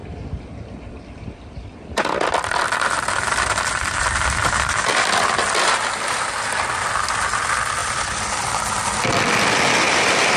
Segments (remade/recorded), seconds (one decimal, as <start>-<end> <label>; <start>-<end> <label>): 0.0-4.9 remade; 4.9-7.8 recorded; 7.8-9.6 remade; 9.6-10.4 recorded